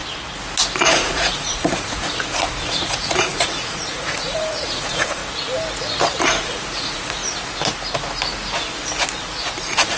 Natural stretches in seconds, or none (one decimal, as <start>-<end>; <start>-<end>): 0.0-0.9; 5.2-6.4; 7.2-9.6